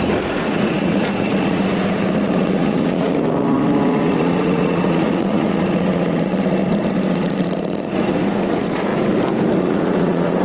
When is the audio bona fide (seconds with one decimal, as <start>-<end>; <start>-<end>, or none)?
6.6-7.1; 8.9-9.6